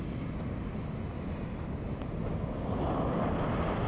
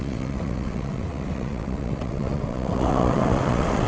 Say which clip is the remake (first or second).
second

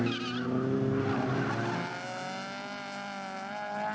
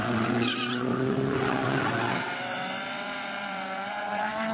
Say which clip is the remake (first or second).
second